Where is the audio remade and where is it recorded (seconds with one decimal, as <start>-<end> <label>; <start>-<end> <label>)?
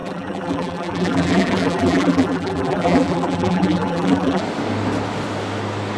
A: 0.0-4.4 remade; 4.4-6.0 recorded